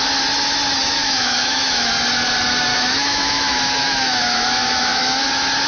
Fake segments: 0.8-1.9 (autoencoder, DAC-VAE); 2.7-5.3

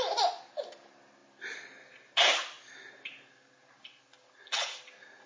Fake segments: none

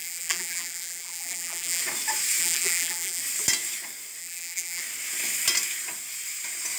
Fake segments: 0.0-1.8 (vocoder, BigVGAN v2); 2.4-3.2; 4.2-4.8

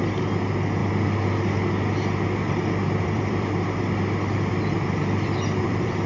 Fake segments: 0.0-6.1 (vocoder, BigVGAN v2)

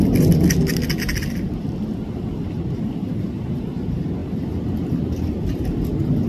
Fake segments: none

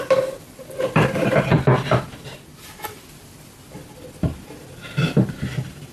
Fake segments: none

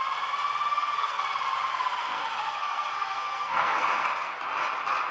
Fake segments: 0.7-1.2 (codec, SNAC); 1.7-4.4